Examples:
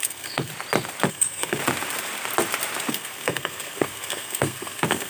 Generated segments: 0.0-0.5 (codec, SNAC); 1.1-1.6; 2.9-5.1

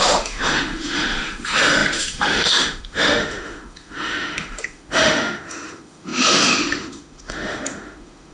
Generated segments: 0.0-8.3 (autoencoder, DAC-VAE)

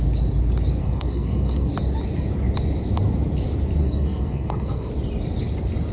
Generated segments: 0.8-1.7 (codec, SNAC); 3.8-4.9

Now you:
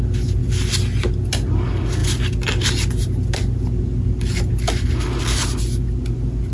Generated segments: none

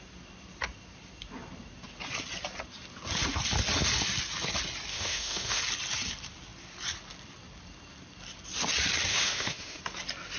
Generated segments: 4.9-5.6 (autoencoder, DAC-VAE); 9.1-9.8